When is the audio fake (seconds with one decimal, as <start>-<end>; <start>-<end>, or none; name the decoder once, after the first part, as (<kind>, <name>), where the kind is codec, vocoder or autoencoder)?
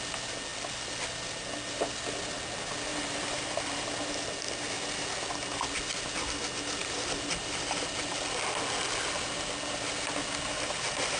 0.5-2.4 (vocoder, BigVGAN v2); 2.9-4.0; 6.8-8.1